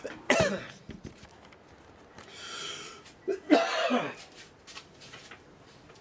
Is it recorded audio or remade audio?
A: recorded